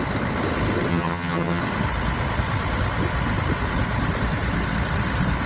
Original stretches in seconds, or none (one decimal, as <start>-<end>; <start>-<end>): 0.0-0.9; 1.6-5.5